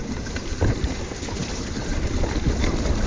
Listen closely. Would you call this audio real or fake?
real